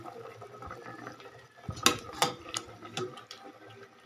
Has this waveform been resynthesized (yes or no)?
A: no